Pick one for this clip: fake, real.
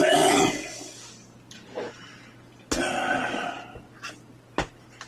real